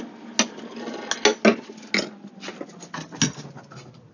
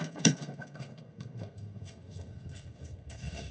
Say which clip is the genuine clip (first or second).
first